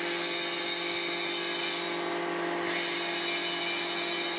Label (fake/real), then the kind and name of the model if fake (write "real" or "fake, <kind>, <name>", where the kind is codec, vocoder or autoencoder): real